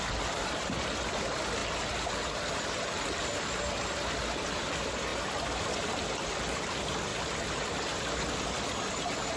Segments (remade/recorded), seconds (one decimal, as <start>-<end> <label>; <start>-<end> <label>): 0.0-9.4 recorded